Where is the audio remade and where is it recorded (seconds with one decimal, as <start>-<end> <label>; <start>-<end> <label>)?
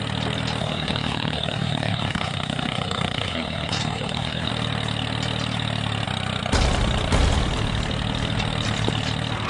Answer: 0.0-0.6 recorded; 0.6-4.5 remade; 4.5-9.5 recorded